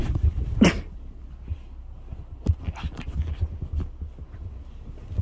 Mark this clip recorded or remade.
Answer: recorded